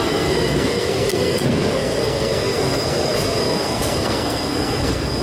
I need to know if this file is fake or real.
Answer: fake